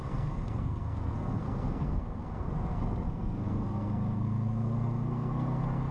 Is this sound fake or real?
fake